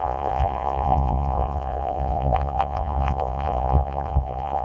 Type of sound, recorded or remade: remade